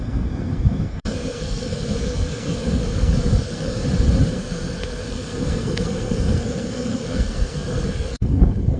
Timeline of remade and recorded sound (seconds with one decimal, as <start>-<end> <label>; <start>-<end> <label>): 0.0-3.8 remade; 3.8-4.3 recorded; 4.3-8.8 remade